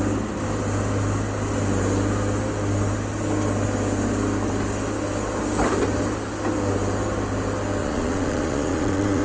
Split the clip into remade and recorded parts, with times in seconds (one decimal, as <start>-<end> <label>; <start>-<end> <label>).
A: 0.0-7.8 recorded; 7.8-9.2 remade

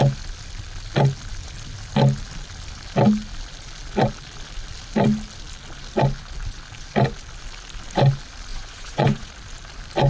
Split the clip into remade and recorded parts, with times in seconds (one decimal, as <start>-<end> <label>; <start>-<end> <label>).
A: 0.0-8.5 recorded; 8.5-9.3 remade; 9.3-10.1 recorded